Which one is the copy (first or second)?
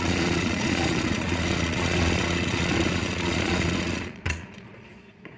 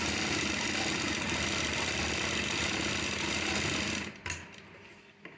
first